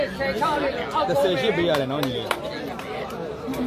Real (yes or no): yes